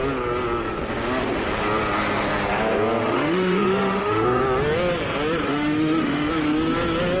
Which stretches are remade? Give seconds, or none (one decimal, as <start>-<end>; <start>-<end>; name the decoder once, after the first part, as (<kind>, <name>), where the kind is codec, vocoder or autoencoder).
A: 3.0-4.4 (autoencoder, DAC-VAE); 5.5-6.3